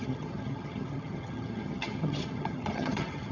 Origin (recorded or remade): remade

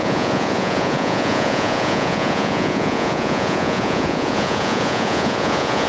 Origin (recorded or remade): remade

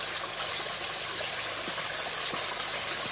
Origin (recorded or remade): recorded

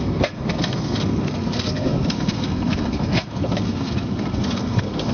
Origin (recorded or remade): remade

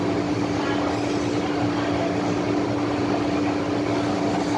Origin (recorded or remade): recorded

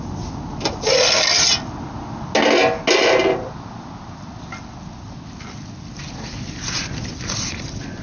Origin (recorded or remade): recorded